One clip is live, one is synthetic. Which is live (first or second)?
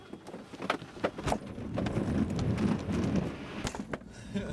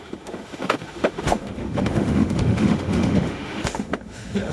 first